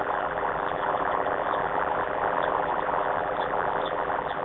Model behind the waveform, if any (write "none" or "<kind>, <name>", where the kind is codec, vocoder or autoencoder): vocoder, BigVGAN v2